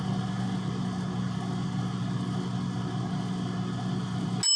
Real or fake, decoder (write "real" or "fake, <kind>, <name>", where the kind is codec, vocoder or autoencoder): real